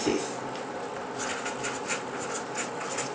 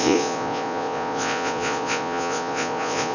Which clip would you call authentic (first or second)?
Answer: first